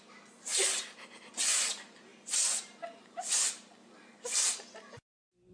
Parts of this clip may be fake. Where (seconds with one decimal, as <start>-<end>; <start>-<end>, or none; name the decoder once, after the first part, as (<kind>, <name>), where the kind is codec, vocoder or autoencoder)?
none